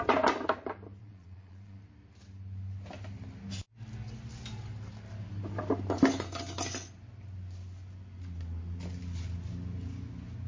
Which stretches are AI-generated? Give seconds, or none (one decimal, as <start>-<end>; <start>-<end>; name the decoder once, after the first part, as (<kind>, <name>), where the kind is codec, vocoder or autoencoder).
1.0-1.8 (vocoder, Vocos)